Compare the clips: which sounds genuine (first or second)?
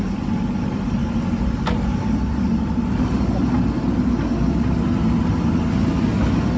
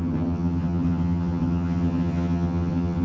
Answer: first